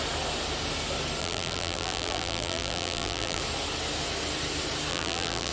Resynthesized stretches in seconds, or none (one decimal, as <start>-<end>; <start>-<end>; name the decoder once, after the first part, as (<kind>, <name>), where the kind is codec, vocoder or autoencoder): 1.2-3.4 (vocoder, BigVGAN v2); 4.9-5.5